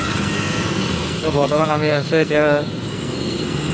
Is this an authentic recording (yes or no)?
no